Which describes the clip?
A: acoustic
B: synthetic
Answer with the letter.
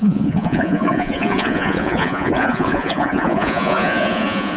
B